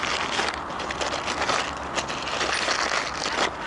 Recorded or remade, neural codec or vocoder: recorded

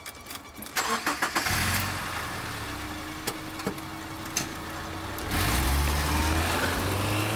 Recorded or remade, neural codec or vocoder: recorded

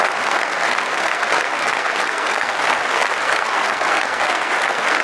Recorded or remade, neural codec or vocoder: remade, codec, SNAC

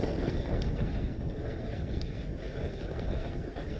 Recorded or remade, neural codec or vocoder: remade, codec, SNAC